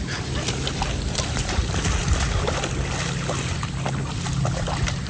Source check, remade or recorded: recorded